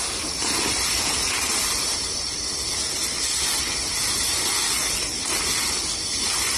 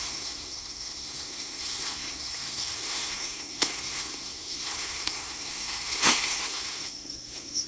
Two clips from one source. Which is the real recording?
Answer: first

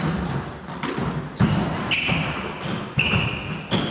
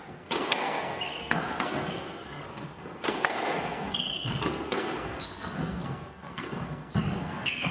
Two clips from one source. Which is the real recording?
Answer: first